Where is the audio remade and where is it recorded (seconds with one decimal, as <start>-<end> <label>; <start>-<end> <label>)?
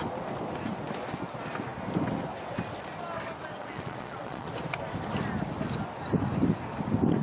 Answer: 0.0-3.6 recorded; 3.6-4.5 remade; 4.5-7.2 recorded